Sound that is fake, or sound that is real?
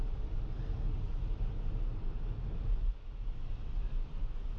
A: real